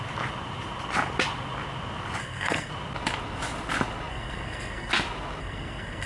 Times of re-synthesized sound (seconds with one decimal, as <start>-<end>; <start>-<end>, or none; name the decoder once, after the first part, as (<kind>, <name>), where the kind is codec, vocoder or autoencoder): 2.2-2.7 (codec, SNAC); 4.1-4.9; 5.4-6.1